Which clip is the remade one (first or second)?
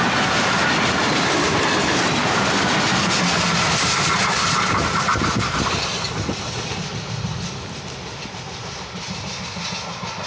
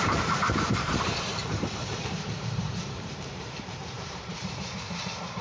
second